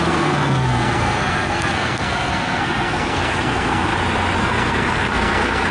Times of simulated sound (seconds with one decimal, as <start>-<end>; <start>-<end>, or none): 0.0-3.9; 4.4-5.7